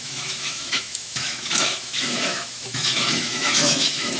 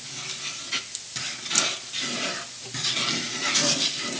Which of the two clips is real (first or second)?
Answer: second